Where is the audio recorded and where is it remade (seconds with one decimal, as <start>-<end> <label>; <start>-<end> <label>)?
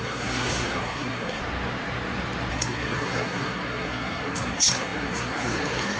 0.0-1.4 remade; 1.4-2.5 recorded; 2.5-6.0 remade